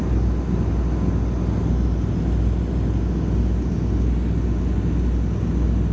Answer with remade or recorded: recorded